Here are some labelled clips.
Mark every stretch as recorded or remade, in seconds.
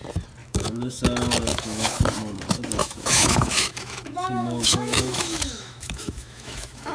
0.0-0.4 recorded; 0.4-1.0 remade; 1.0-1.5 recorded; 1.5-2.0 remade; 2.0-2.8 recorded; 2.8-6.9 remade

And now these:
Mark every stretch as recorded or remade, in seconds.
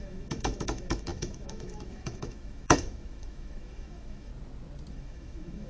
0.0-4.3 remade; 4.3-4.9 recorded; 4.9-5.7 remade